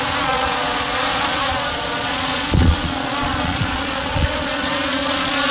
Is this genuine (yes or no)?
no